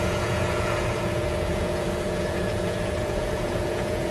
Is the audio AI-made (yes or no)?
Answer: yes